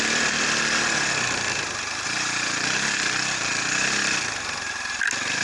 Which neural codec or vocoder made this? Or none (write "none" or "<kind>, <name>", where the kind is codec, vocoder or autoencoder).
none